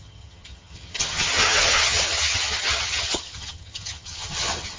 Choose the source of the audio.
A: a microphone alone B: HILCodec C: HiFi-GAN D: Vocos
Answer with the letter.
C